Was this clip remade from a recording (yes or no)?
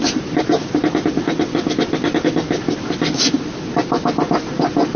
no